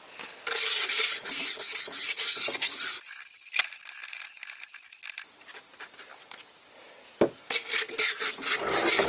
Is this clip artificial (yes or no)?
no